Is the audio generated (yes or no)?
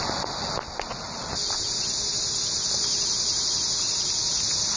no